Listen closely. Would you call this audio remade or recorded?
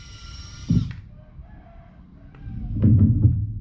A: recorded